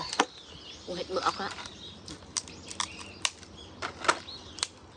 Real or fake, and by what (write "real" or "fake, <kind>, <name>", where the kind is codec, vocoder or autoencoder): real